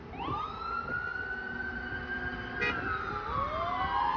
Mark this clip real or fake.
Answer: real